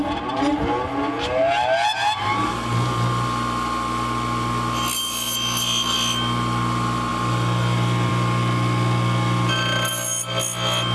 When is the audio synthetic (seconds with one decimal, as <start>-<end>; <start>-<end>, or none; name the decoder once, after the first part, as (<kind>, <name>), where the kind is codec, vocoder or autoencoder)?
none

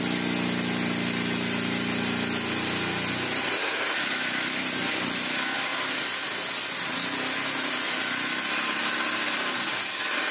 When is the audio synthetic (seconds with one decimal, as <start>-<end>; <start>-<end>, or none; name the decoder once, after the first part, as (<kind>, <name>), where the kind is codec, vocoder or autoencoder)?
none

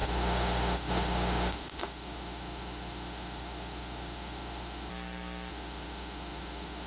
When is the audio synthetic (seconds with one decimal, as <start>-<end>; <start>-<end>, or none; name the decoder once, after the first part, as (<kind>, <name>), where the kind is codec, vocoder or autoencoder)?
0.0-4.9 (autoencoder, DAC-VAE); 5.5-6.9

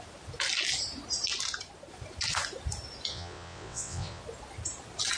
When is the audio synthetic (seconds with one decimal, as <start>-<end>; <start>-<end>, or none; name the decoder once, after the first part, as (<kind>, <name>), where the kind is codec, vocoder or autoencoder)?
3.1-4.2 (vocoder, WaveNeXt)

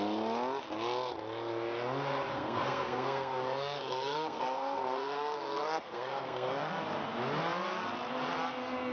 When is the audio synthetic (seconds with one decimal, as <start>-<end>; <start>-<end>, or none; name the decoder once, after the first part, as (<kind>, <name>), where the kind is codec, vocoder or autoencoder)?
2.3-6.7 (codec, SNAC)

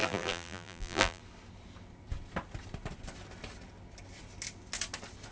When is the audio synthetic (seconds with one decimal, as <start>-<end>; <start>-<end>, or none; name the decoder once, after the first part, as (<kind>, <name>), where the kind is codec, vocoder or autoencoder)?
0.0-1.2 (vocoder, BigVGAN v2)

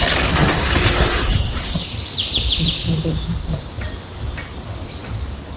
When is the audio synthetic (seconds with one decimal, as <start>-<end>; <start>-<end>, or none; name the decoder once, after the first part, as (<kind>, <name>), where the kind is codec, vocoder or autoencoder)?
0.4-3.8 (vocoder, BigVGAN v2)